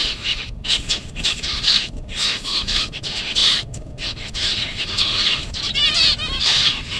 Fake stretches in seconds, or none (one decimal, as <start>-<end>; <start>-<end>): 0.0-5.6; 6.4-7.0